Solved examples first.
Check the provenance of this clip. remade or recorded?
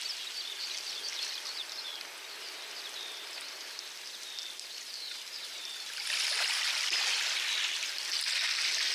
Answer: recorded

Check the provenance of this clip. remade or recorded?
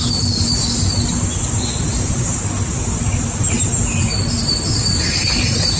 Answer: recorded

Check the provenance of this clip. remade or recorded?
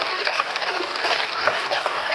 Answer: remade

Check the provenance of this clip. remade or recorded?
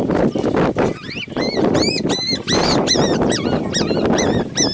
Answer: recorded